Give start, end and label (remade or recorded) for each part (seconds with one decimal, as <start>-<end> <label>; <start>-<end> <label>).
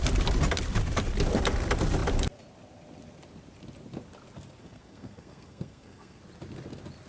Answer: 0.0-4.6 recorded; 4.6-6.2 remade; 6.2-7.1 recorded